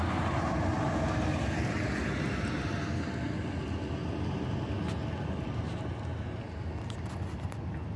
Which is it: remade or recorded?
recorded